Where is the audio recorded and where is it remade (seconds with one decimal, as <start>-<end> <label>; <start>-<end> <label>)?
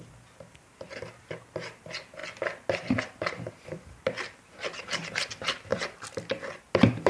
0.0-7.1 recorded